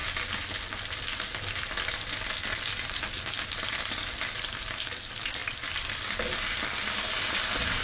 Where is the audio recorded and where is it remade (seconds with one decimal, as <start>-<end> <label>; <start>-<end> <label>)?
0.0-7.8 recorded